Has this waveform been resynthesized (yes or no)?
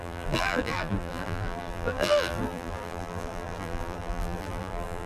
yes